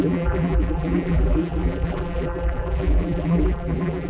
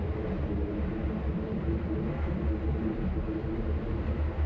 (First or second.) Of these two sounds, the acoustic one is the second